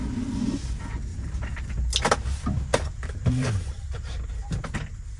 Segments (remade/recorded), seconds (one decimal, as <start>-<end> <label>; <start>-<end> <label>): 0.0-1.1 recorded; 1.1-1.7 remade; 1.7-2.7 recorded; 2.7-4.3 remade; 4.3-5.2 recorded